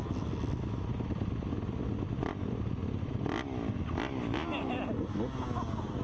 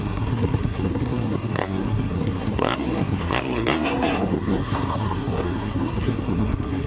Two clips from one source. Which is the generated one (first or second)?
second